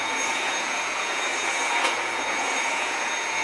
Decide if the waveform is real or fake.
fake